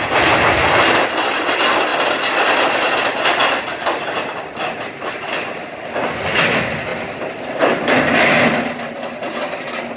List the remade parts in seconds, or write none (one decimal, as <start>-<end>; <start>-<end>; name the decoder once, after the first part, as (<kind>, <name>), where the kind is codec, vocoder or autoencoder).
none